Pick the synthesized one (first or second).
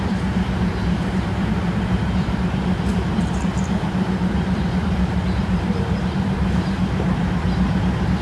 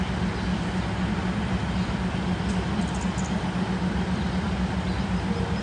first